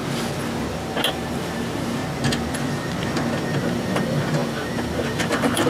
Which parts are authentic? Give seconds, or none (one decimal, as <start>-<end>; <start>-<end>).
0.0-1.1; 2.0-3.6